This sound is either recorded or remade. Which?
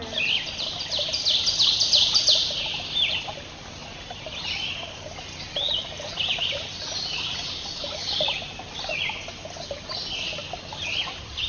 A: remade